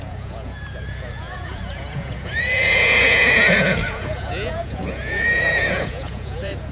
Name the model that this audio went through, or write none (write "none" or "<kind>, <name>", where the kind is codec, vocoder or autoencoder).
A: vocoder, Vocos